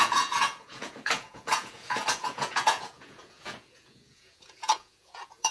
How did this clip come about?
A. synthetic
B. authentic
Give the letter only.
A